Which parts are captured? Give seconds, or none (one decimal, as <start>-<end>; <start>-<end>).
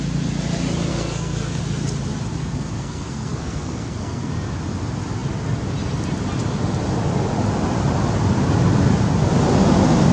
0.0-0.9; 1.6-2.4; 4.3-10.1